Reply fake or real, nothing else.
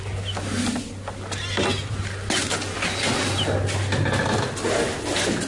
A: real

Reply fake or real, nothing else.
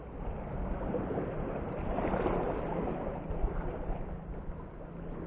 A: real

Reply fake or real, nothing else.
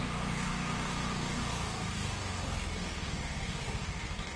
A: fake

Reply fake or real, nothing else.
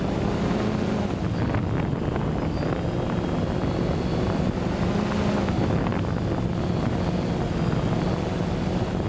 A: real